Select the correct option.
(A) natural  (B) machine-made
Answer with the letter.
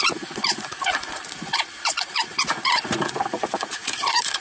B